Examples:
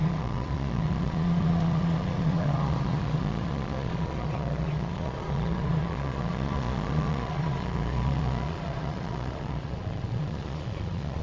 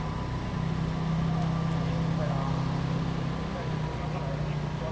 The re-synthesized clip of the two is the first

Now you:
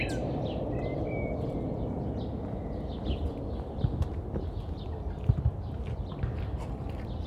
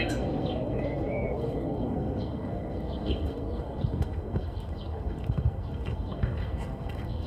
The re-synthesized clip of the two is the second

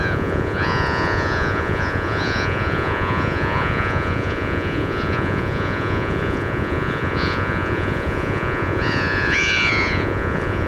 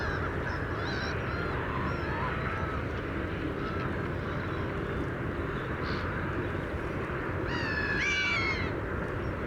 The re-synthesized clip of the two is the first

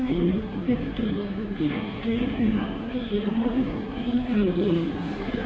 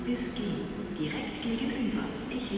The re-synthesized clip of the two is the first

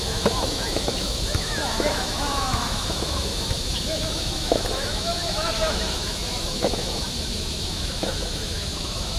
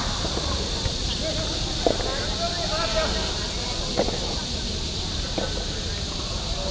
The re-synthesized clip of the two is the first